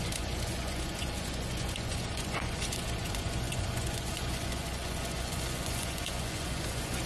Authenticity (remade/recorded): remade